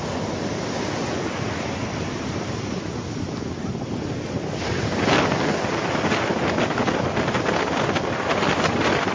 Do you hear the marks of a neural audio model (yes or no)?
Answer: no